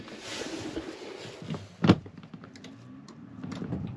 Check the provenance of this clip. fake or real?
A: real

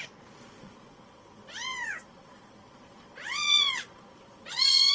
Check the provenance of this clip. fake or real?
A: fake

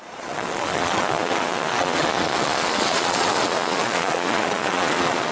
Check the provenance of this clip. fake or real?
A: fake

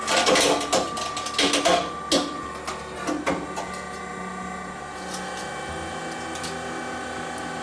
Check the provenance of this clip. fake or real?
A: real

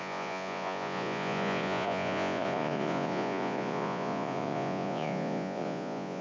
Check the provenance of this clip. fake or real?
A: fake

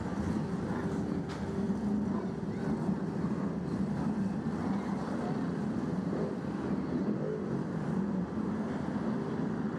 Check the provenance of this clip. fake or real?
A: real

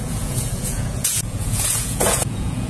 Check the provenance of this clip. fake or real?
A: fake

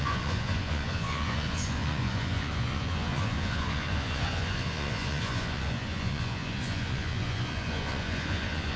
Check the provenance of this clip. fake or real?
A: fake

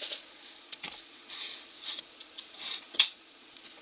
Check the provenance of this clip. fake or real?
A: fake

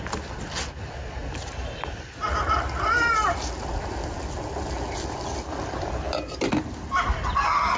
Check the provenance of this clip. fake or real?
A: real